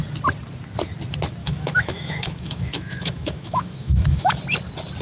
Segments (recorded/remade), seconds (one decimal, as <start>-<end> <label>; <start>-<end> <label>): 0.0-1.4 recorded; 1.4-4.4 remade; 4.4-5.0 recorded